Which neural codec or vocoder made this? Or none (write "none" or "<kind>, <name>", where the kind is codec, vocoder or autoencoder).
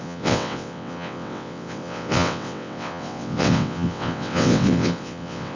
vocoder, WaveNeXt